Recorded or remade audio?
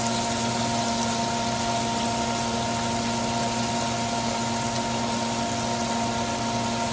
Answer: recorded